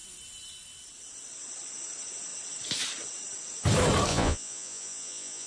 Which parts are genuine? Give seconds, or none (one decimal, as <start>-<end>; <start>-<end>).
0.0-4.1